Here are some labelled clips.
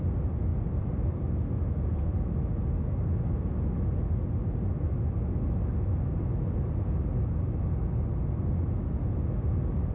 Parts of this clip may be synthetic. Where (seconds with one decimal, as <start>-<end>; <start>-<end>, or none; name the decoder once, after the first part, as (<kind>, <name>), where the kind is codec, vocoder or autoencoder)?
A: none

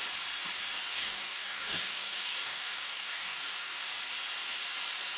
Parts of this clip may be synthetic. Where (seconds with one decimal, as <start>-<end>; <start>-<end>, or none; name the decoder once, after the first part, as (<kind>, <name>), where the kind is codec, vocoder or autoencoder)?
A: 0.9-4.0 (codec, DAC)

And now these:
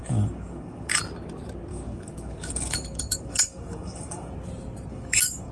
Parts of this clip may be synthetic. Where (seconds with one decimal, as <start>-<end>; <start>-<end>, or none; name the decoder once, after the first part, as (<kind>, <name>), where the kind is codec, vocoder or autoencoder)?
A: 0.0-1.0 (codec, DAC); 1.7-4.3; 4.9-5.5